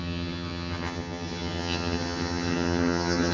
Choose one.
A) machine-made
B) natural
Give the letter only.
A